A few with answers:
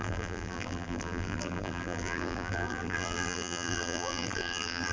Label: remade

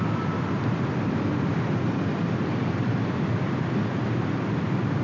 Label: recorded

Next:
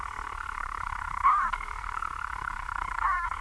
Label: remade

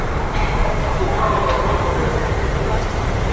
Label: remade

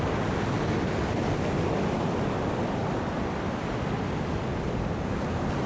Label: recorded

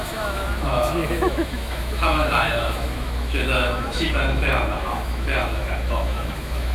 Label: remade